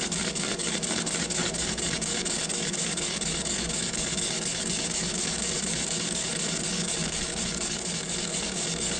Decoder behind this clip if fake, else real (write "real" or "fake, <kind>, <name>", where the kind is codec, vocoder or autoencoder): fake, codec, DAC